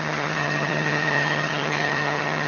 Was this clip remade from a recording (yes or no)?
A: yes